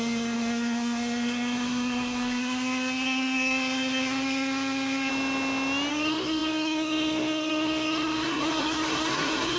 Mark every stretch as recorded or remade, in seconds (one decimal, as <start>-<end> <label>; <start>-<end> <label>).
0.0-5.1 remade; 5.1-5.9 recorded; 5.9-9.6 remade